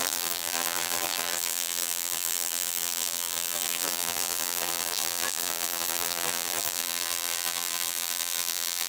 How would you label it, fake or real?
fake